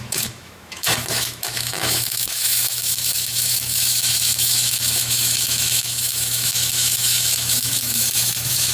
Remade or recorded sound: remade